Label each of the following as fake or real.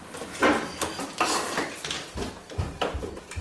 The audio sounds real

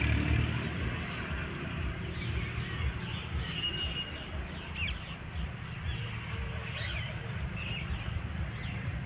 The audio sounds real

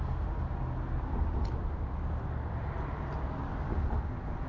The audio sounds real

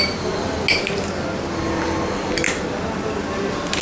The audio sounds real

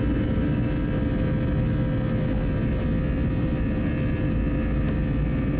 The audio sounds real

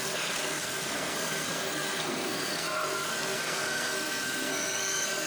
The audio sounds fake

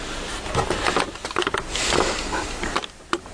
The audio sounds real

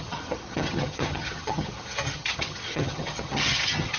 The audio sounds fake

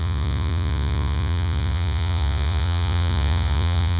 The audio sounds fake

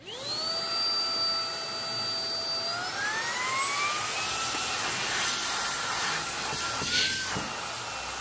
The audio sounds real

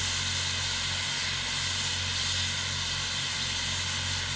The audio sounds real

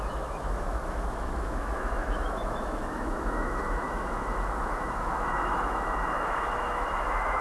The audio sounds fake